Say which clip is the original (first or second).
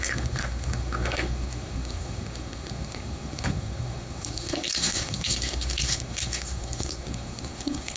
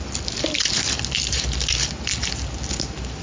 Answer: second